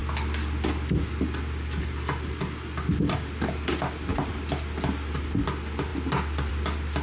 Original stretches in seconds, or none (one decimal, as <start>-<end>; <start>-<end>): 0.0-7.0